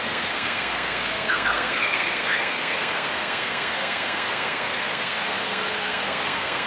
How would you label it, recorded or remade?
remade